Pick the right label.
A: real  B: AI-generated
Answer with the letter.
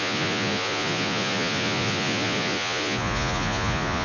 B